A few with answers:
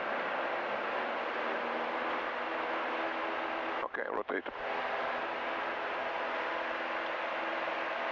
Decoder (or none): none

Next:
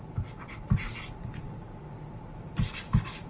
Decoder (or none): none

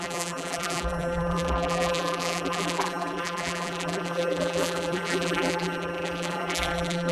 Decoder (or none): vocoder, BigVGAN v2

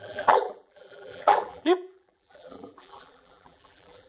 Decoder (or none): vocoder, BigVGAN v2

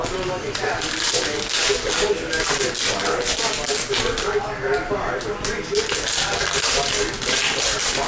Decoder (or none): none